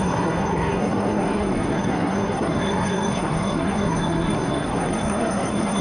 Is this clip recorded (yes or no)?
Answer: no